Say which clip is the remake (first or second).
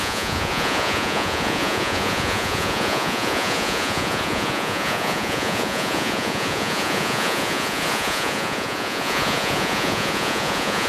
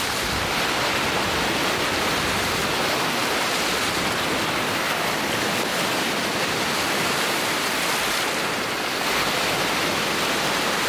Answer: first